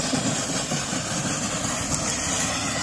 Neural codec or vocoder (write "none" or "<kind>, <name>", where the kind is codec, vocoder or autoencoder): none